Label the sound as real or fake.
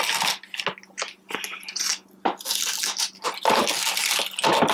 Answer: real